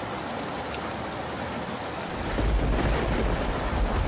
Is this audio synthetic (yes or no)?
no